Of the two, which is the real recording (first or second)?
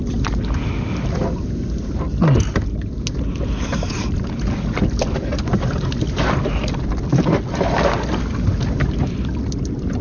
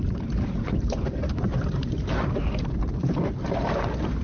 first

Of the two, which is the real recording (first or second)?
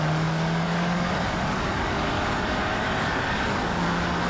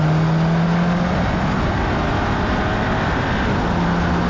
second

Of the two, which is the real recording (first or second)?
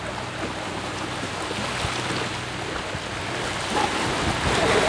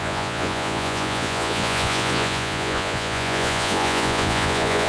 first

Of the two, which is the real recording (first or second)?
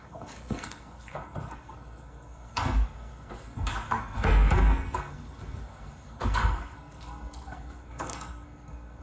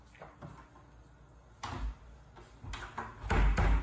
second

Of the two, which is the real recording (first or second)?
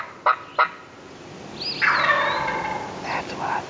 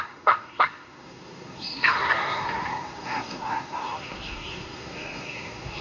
first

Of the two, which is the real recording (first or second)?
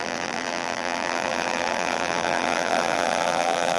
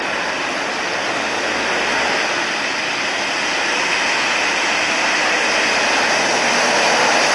second